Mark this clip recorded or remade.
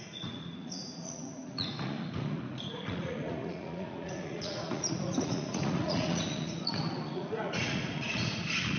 remade